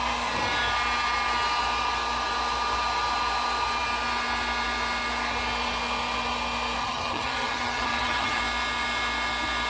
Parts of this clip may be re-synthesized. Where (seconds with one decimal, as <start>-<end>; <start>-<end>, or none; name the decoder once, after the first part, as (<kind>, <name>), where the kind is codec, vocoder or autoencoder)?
6.8-8.4 (vocoder, HiFi-GAN)